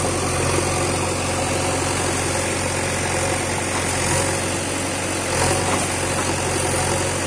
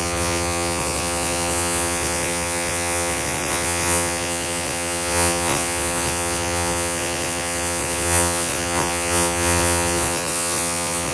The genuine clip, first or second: first